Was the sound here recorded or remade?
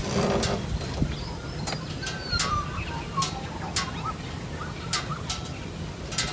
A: recorded